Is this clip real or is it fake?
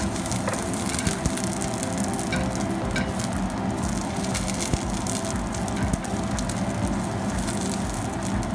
real